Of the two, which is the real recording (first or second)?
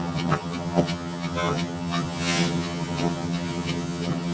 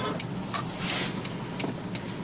second